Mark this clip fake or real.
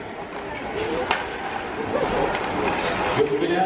real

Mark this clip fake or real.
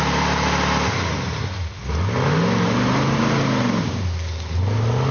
real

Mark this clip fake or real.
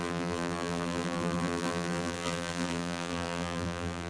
fake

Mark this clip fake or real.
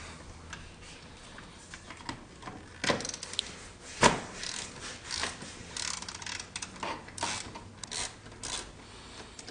real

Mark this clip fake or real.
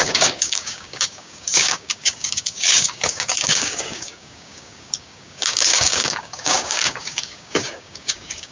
fake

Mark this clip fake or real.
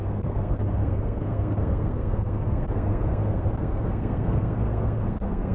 fake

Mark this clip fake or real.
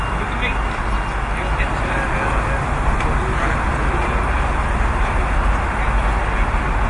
real